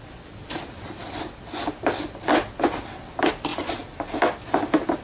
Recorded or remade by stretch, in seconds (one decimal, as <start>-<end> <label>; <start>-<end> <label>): 0.0-5.0 recorded